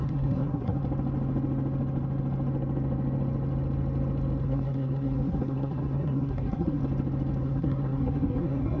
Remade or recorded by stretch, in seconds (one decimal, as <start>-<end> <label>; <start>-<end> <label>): 0.0-0.8 remade; 0.8-4.4 recorded; 4.4-6.8 remade; 6.8-7.4 recorded; 7.4-8.8 remade